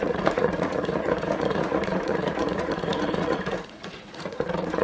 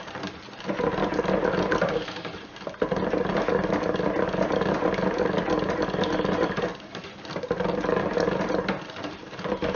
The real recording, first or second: second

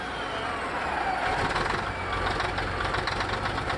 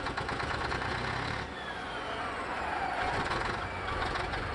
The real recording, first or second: first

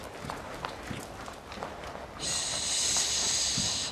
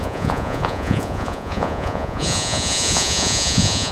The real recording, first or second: first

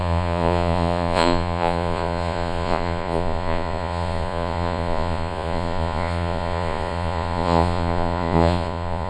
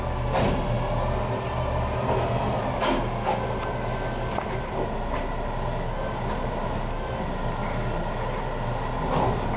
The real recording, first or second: second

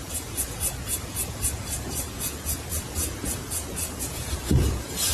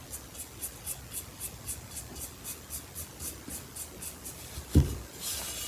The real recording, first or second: second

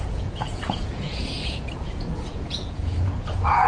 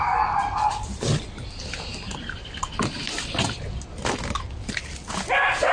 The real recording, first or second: second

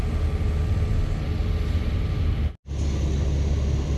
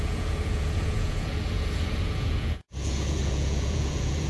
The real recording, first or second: first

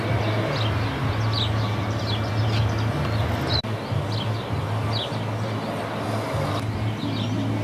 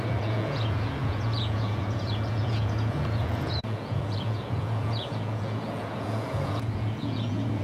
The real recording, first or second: first